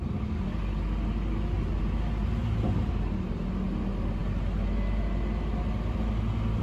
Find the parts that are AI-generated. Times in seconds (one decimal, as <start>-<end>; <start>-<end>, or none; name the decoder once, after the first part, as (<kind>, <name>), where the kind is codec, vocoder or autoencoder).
none